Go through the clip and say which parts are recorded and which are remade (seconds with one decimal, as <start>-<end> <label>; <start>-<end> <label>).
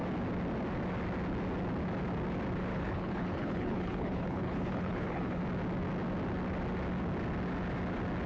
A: 0.0-2.7 recorded; 2.7-5.4 remade; 5.4-8.3 recorded